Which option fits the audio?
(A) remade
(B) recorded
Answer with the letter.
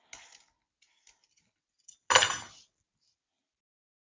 B